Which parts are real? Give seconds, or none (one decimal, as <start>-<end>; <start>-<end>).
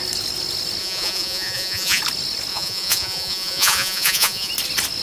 0.0-0.8; 2.0-2.5; 4.5-5.0